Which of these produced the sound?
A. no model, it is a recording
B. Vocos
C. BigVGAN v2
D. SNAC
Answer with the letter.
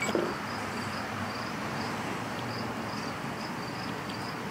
A